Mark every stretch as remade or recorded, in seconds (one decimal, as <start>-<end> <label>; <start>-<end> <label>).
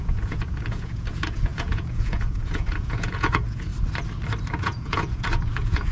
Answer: 0.0-3.7 remade; 3.7-4.6 recorded; 4.6-5.9 remade